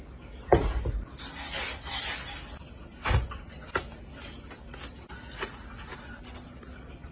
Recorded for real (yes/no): yes